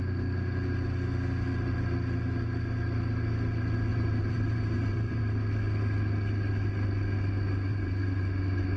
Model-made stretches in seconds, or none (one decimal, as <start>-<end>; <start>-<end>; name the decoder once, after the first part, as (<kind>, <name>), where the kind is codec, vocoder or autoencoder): 3.9-5.2 (vocoder, BigVGAN v2); 7.7-8.2